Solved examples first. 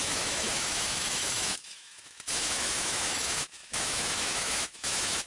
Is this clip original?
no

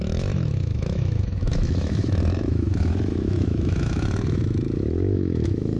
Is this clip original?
no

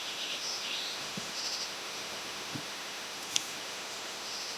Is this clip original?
no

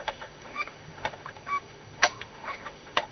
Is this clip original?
no